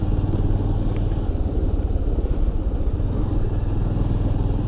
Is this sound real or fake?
real